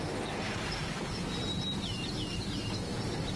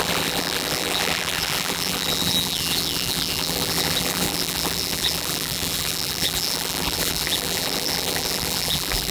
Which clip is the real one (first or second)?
first